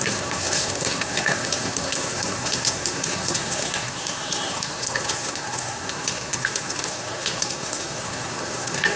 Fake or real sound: fake